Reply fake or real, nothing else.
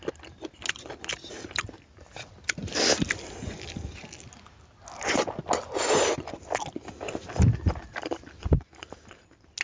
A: real